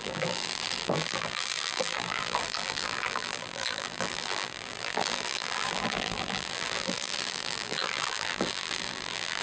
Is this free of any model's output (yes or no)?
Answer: no